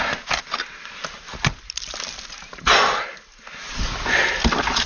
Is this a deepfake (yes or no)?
no